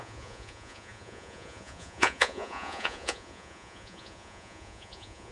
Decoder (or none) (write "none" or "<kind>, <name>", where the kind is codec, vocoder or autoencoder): vocoder, Vocos